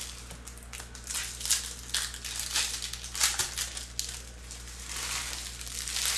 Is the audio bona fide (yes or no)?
yes